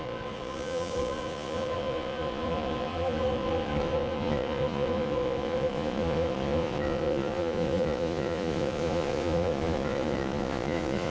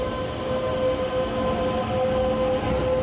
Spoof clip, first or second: first